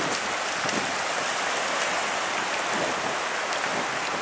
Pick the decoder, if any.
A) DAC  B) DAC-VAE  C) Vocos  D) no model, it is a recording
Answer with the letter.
D